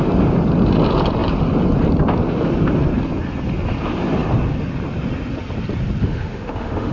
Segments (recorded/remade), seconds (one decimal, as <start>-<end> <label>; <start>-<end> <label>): 0.0-6.0 recorded; 6.0-6.9 remade